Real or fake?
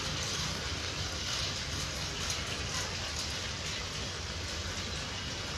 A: real